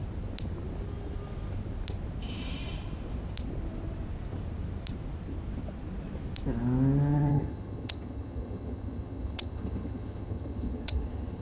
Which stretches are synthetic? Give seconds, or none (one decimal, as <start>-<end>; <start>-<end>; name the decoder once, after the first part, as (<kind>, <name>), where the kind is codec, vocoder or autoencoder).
7.3-11.4 (vocoder, HiFi-GAN)